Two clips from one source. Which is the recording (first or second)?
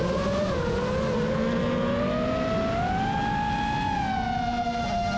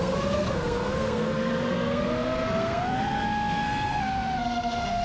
first